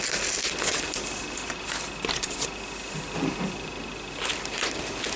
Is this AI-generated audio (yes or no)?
no